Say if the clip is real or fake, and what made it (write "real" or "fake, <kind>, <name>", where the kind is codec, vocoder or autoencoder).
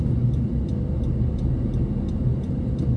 real